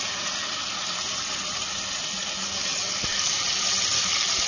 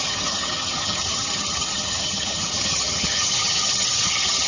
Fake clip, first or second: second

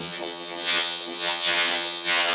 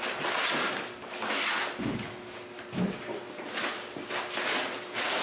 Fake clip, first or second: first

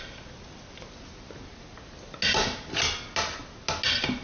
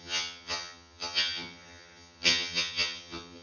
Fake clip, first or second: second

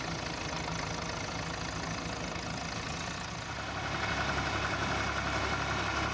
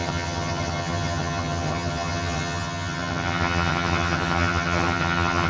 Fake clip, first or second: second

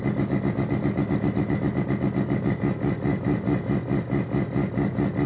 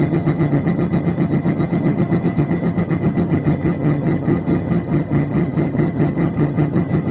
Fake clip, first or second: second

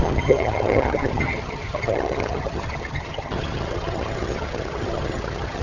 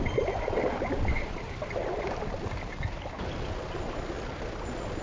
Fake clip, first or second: first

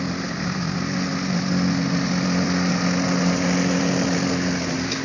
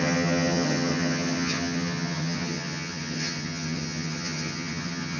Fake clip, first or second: second